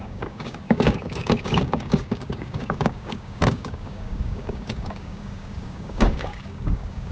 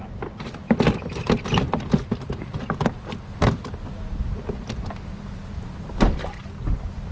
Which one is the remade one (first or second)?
first